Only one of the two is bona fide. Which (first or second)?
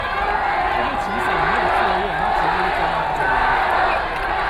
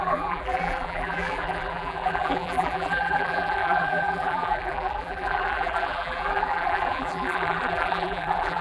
first